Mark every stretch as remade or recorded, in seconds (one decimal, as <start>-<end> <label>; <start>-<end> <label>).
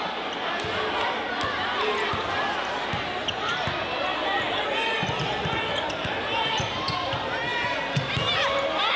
0.0-4.1 recorded; 4.1-6.7 remade; 6.7-7.5 recorded; 7.5-8.0 remade; 8.0-9.0 recorded